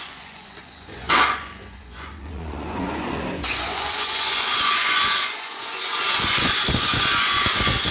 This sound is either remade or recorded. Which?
remade